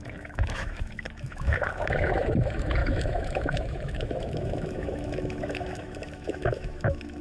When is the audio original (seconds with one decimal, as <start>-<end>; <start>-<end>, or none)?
none